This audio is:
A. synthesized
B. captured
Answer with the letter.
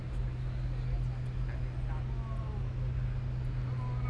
B